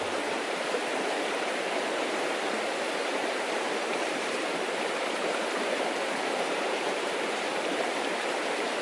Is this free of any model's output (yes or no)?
no